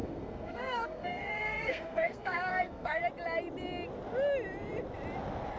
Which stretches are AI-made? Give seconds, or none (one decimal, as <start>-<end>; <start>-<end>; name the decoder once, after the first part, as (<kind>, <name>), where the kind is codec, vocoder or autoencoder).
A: 0.0-3.0 (codec, SNAC)